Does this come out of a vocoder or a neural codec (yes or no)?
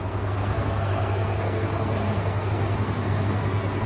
yes